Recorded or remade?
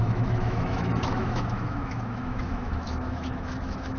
remade